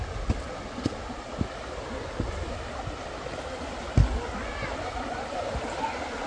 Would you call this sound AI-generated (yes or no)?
no